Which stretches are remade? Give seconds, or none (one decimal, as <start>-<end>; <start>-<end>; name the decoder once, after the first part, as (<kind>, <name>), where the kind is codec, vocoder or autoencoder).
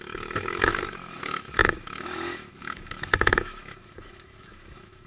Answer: 0.0-5.1 (autoencoder, DAC-VAE)